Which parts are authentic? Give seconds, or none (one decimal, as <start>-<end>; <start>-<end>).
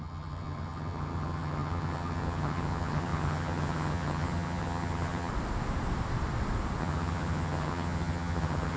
5.3-6.8